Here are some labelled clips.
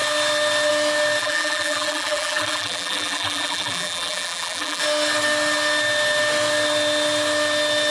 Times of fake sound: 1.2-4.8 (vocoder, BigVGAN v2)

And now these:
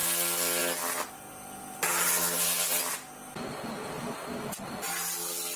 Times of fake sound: none

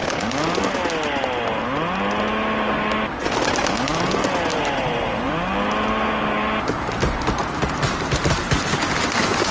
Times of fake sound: 4.5-5.3 (vocoder, BigVGAN v2); 7.4-8.6

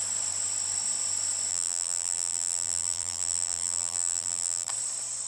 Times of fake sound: 1.5-4.7 (vocoder, BigVGAN v2)

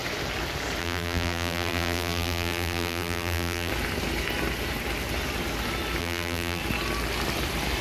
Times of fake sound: 0.8-3.7 (vocoder, BigVGAN v2); 6.0-6.6

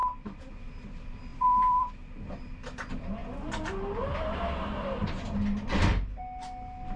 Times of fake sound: 1.3-1.9 (vocoder, BigVGAN v2)

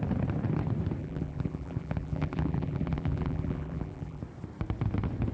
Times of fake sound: 1.0-4.2 (vocoder, BigVGAN v2)